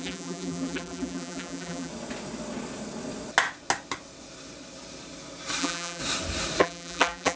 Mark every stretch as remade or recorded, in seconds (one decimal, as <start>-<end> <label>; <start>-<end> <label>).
0.0-1.9 remade; 1.9-5.6 recorded; 5.6-6.0 remade; 6.0-6.6 recorded; 6.6-7.4 remade